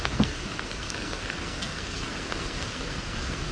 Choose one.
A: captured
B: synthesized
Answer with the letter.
B